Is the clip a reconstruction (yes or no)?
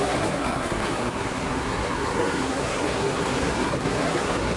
yes